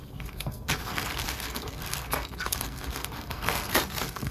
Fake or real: fake